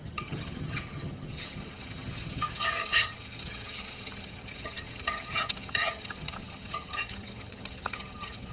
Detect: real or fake fake